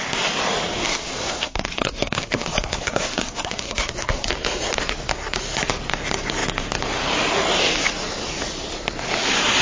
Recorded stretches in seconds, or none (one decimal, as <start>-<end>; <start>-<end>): 0.0-0.7; 4.3-9.6